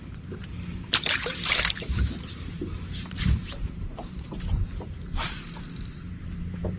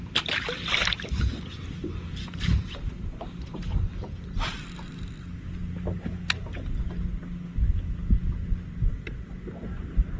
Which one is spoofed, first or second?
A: first